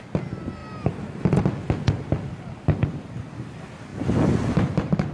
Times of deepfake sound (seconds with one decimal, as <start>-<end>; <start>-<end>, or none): none